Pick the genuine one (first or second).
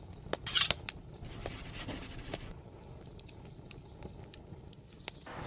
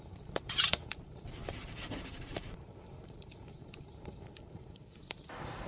first